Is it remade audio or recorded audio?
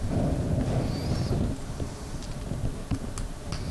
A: recorded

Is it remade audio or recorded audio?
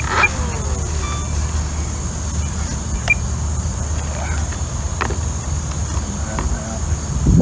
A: recorded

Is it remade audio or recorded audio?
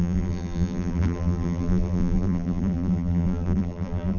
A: remade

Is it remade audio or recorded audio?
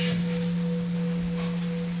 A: recorded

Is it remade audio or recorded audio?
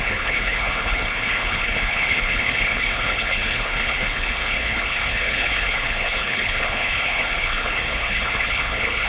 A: remade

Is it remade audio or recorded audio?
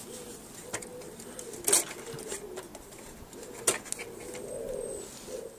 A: recorded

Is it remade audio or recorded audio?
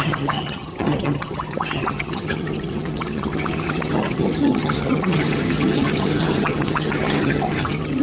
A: remade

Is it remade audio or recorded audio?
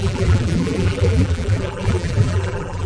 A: remade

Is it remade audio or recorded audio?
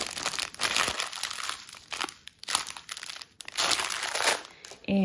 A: recorded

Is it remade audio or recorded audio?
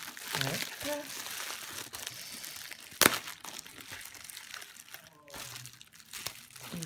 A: recorded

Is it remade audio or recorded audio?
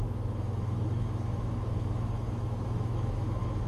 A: remade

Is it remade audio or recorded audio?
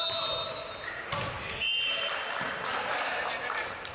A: recorded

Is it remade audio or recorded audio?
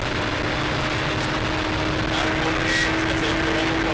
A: recorded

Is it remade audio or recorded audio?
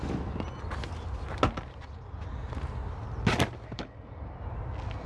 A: recorded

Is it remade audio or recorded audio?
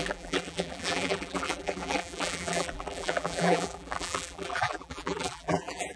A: remade